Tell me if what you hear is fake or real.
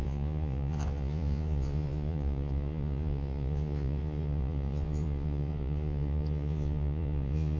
fake